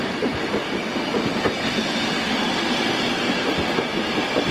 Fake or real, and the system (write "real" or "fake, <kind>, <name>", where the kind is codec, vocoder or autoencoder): real